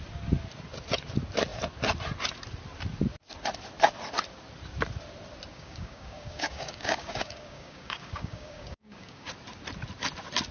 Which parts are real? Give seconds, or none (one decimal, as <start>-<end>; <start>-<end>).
0.0-5.5; 9.3-10.5